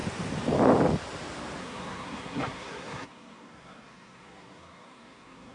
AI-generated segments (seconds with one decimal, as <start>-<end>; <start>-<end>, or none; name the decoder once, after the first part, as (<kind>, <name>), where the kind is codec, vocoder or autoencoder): 1.6-5.5 (codec, SNAC)